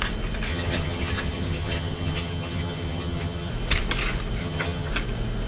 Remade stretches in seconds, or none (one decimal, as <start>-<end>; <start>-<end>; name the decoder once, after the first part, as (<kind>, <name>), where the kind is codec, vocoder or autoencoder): 0.5-3.5 (vocoder, HiFi-GAN); 4.4-4.9